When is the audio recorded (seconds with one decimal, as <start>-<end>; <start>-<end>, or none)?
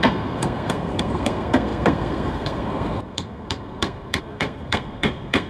none